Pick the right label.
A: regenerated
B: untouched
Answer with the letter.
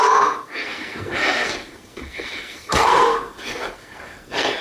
A